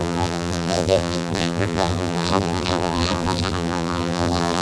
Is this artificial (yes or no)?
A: yes